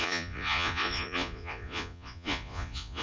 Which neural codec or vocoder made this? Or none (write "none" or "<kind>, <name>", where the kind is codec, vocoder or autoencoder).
vocoder, Vocos